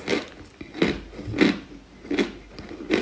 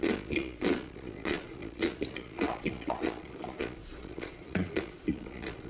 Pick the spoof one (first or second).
second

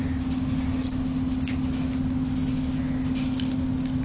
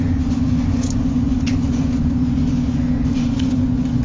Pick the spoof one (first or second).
second